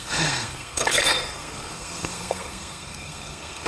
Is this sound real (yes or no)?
no